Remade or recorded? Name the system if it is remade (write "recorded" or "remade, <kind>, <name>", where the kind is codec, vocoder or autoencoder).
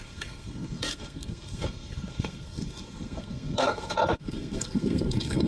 remade, codec, SNAC